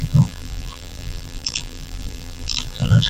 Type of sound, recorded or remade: remade